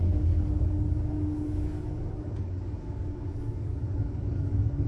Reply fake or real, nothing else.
fake